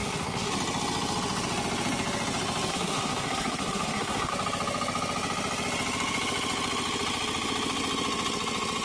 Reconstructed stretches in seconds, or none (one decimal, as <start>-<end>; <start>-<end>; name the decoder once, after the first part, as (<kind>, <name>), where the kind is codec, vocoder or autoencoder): 0.0-0.5 (codec, SNAC); 2.7-4.3